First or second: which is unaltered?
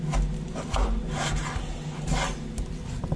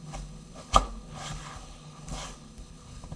first